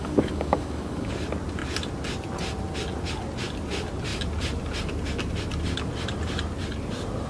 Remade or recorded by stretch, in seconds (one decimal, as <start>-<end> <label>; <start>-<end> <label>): 0.0-1.1 remade; 1.1-7.3 recorded